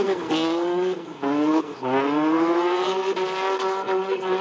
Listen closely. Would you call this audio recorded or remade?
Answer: remade